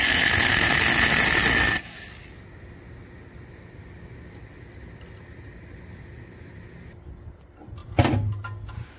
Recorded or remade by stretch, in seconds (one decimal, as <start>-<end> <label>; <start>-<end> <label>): 0.0-9.0 recorded